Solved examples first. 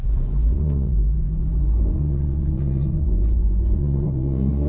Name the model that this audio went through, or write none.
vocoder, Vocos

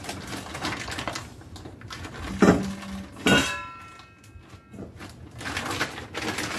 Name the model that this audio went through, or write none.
none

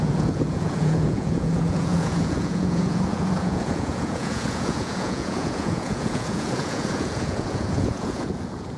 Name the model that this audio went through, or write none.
vocoder, Vocos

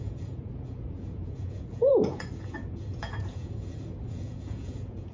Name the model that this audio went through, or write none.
vocoder, Vocos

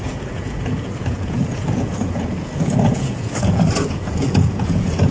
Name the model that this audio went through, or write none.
vocoder, Vocos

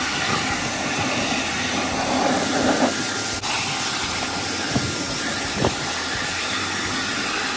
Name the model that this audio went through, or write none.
none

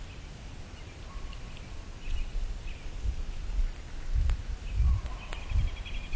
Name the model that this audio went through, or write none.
none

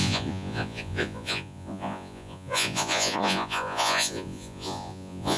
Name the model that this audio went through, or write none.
vocoder, Vocos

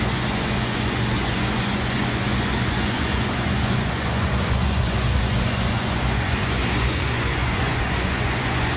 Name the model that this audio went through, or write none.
vocoder, Vocos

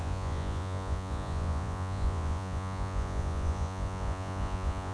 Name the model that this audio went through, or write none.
vocoder, Vocos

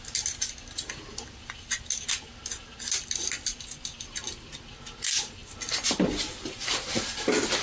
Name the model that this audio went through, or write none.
none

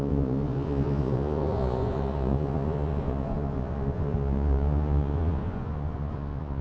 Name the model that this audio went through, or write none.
vocoder, Vocos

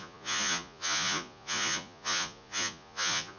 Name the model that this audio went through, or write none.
vocoder, Vocos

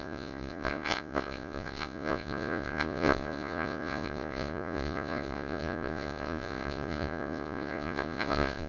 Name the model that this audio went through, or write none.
vocoder, Vocos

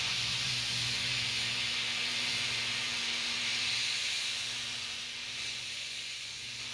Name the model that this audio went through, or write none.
vocoder, Vocos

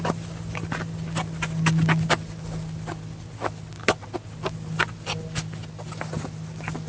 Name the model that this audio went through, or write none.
none